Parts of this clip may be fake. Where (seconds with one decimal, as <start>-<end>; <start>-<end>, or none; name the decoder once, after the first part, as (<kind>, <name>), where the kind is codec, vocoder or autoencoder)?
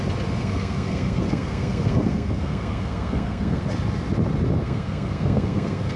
0.4-3.6 (codec, SNAC); 4.6-6.0